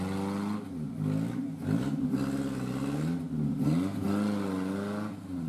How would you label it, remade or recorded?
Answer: recorded